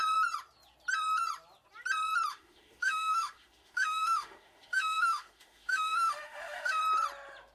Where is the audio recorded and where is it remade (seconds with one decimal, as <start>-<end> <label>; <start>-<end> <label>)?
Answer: 0.0-2.3 recorded; 2.3-6.8 remade; 6.8-7.5 recorded